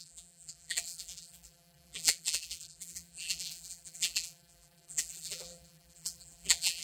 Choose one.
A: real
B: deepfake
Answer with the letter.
B